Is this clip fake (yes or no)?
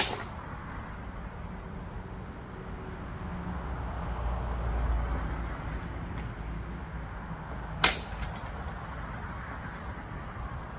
no